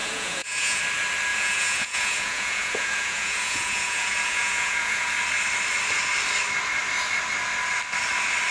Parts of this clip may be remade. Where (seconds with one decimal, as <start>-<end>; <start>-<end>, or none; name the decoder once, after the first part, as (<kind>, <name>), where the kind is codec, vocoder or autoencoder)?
0.0-0.8 (vocoder, Vocos); 1.3-5.1

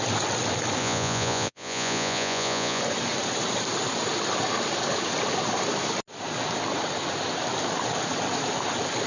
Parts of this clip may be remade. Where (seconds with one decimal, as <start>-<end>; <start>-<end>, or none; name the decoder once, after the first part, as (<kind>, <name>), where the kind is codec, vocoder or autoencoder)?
0.8-2.8 (vocoder, Vocos)

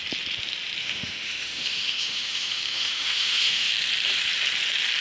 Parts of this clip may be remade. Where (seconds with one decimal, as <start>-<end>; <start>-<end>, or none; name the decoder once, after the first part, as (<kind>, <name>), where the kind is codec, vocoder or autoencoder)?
0.8-3.7 (autoencoder, DAC-VAE)

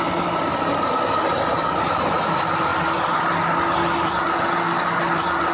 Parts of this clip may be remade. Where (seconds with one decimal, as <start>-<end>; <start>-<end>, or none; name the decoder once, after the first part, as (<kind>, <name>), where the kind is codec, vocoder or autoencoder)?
none

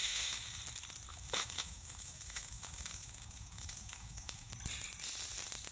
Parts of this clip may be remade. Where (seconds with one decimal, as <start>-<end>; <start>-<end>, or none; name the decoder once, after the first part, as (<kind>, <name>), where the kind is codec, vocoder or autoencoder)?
0.0-0.6 (autoencoder, DAC-VAE); 1.1-4.5